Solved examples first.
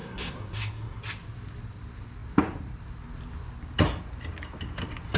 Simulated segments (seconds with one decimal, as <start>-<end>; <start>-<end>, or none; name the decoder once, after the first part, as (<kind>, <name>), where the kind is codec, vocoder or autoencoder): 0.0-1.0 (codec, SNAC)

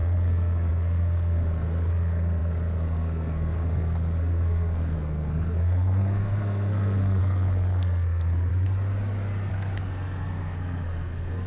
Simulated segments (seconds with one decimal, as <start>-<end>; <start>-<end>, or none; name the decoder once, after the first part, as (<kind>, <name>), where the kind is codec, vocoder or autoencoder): 0.0-8.5 (codec, SNAC); 9.5-11.5

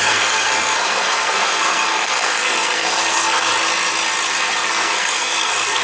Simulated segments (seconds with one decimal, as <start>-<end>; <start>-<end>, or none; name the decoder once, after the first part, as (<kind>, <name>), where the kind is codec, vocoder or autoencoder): 0.0-3.5 (codec, SNAC); 4.3-5.8

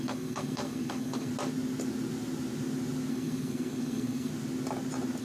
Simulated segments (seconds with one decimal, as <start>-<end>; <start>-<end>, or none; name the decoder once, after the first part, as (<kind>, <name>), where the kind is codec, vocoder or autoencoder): 0.0-1.3 (codec, SNAC); 3.1-4.3

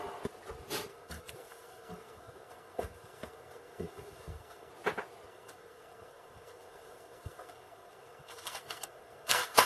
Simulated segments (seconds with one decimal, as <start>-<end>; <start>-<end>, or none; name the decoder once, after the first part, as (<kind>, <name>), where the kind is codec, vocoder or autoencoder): 0.9-4.7 (codec, SNAC); 5.3-9.7